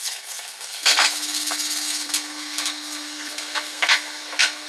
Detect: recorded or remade remade